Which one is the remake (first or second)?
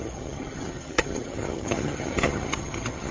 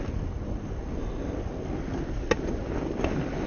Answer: first